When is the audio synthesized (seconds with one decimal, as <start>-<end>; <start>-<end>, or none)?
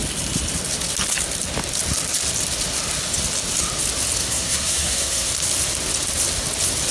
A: 4.2-5.3